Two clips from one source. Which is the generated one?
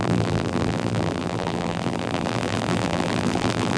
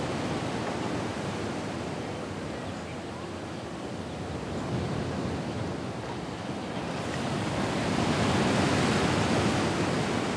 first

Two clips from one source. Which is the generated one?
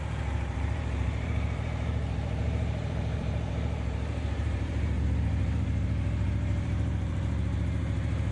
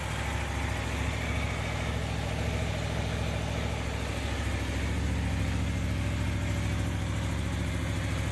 first